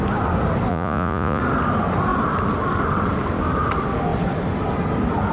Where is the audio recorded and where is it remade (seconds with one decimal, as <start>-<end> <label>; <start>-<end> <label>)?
0.0-0.7 recorded; 0.7-1.4 remade; 1.4-5.3 recorded